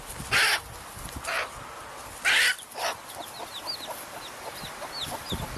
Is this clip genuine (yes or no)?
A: yes